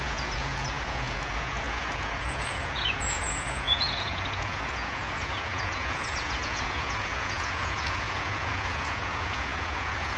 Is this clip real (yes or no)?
no